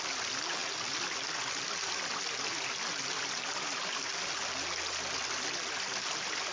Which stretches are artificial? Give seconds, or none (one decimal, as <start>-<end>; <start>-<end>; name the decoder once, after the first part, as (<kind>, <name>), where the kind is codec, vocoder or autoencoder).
none